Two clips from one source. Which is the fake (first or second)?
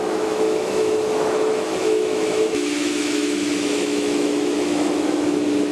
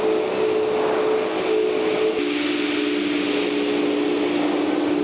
first